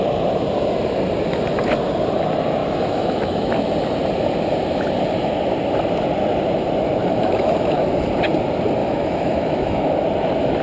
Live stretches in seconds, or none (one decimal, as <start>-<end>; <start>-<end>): 0.0-2.6; 3.5-7.0; 7.8-8.8; 9.9-10.6